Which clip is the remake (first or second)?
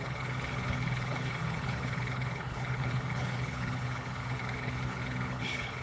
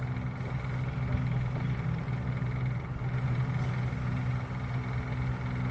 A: first